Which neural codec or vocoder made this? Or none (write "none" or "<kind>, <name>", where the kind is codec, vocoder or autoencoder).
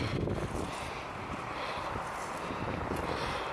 none